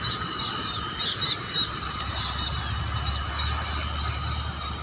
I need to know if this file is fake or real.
real